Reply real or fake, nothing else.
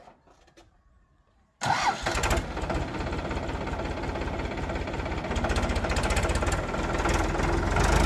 real